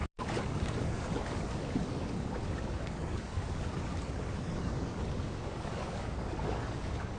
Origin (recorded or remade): remade